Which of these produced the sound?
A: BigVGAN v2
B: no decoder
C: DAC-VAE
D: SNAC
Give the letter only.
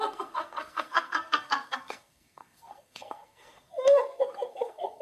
D